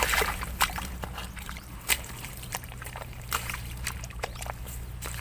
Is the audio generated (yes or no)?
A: yes